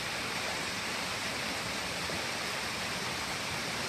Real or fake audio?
real